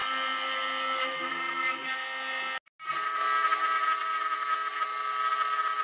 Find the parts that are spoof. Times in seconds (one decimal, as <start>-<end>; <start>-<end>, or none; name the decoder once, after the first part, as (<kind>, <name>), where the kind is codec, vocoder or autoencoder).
none